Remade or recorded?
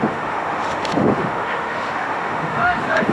remade